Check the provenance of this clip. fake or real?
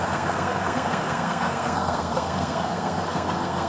fake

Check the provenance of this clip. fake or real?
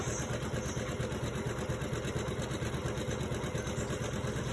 real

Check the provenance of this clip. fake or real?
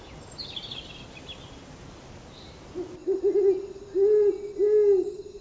real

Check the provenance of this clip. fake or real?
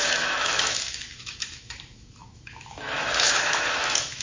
fake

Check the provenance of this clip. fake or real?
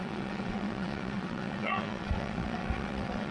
fake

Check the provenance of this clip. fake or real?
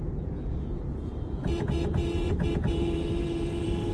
fake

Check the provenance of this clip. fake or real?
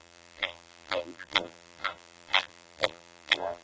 fake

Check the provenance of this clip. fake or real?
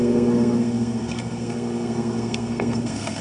fake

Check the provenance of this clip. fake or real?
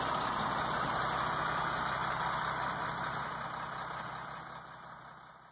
real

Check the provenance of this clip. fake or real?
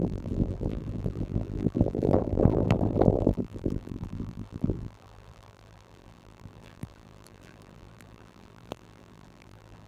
fake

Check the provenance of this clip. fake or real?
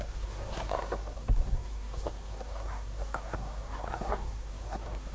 fake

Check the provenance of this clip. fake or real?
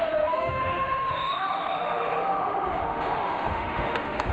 fake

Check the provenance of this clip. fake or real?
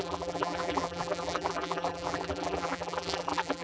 fake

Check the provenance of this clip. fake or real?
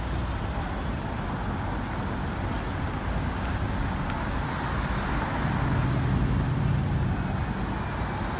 real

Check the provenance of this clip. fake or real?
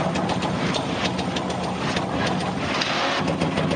real